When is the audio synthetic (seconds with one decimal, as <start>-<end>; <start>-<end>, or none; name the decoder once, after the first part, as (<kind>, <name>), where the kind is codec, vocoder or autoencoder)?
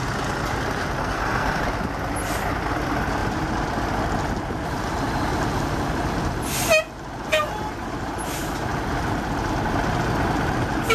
1.0-1.6 (codec, SNAC)